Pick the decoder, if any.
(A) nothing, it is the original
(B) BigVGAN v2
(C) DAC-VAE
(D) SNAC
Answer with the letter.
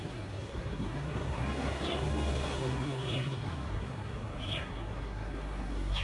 D